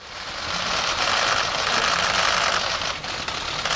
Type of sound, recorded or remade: recorded